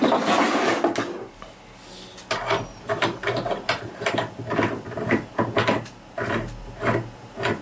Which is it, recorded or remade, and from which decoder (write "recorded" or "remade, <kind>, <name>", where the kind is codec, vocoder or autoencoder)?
recorded